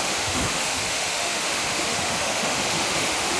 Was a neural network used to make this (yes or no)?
yes